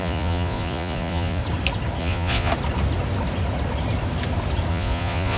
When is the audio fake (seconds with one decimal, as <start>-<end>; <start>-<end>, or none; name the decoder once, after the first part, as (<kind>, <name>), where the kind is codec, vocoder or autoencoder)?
0.0-1.4 (vocoder, Vocos); 2.0-2.5; 4.7-5.4